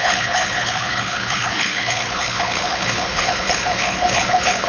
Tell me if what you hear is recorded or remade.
remade